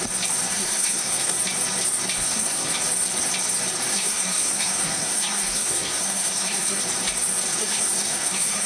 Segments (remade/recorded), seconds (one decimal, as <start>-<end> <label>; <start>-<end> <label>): 0.0-0.5 recorded; 0.5-1.4 remade; 1.4-2.2 recorded; 2.2-2.8 remade; 2.8-3.9 recorded; 3.9-6.8 remade; 6.8-7.6 recorded; 7.6-8.7 remade